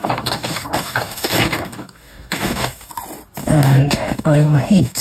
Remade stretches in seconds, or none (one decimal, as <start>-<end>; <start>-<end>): 0.0-2.9; 3.4-5.0